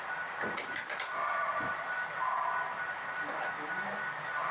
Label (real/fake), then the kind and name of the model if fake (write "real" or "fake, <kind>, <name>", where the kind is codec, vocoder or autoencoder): real